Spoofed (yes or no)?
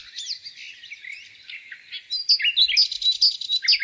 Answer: no